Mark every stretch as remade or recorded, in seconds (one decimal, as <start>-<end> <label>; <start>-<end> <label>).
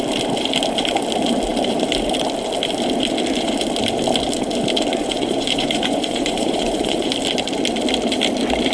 0.0-4.9 recorded; 4.9-7.1 remade; 7.1-8.7 recorded